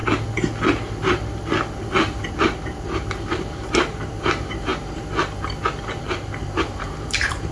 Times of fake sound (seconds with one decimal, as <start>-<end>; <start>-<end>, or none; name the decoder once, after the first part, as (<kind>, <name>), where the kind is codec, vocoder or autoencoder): 2.3-4.7 (vocoder, BigVGAN v2); 6.0-7.5